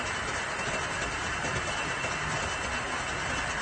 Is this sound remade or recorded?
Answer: recorded